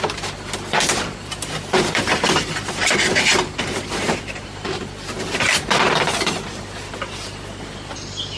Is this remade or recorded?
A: remade